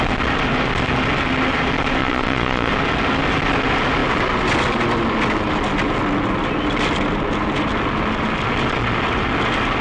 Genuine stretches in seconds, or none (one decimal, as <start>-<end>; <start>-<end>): 0.0-2.0; 2.7-9.8